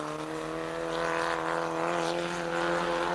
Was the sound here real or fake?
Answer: real